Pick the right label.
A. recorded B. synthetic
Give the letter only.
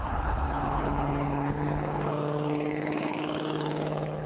B